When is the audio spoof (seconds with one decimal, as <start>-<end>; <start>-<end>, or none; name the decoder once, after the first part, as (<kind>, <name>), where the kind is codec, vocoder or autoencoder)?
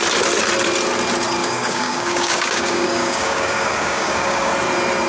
1.4-4.5 (codec, DAC)